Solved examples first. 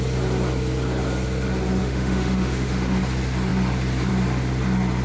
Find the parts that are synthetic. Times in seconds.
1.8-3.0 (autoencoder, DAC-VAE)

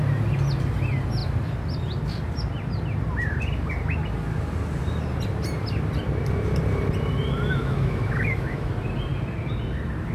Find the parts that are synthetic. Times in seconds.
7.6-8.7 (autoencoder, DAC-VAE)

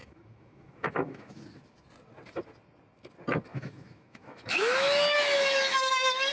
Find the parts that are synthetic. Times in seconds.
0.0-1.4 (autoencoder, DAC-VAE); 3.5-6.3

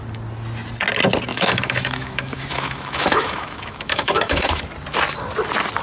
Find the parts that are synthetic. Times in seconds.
1.3-4.6 (autoencoder, DAC-VAE)

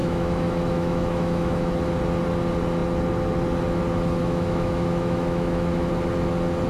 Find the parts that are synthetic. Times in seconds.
0.0-1.7 (autoencoder, DAC-VAE); 4.2-5.9

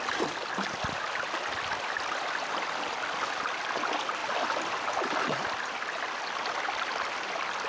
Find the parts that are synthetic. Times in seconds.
none

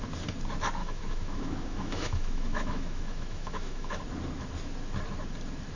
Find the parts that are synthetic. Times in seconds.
0.8-4.0 (autoencoder, DAC-VAE)